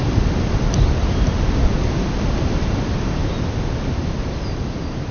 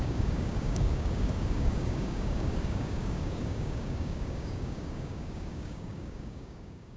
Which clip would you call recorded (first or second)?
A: first